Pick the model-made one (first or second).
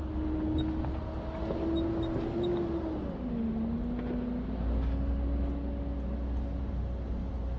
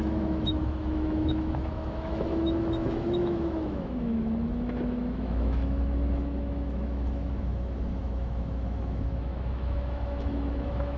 second